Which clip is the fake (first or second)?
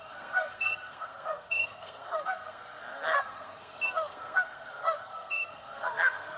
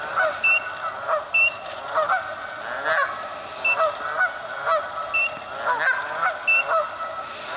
first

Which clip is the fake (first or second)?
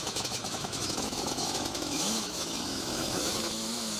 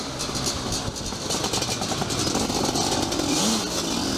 first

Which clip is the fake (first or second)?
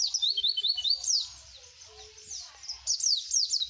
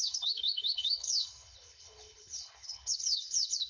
second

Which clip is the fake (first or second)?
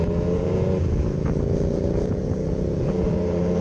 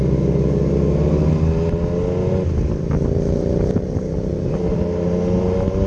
first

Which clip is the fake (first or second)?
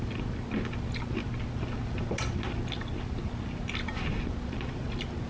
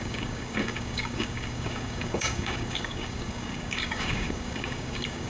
second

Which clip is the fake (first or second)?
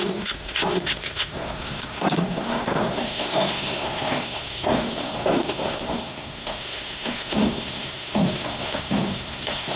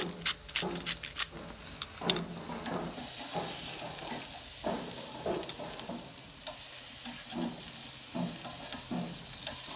first